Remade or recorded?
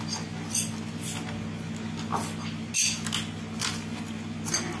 recorded